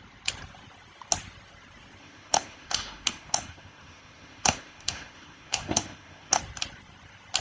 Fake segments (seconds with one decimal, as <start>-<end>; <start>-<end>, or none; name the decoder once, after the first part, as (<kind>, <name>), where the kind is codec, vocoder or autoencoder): 2.0-6.4 (autoencoder, DAC-VAE)